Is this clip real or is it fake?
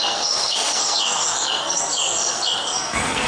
fake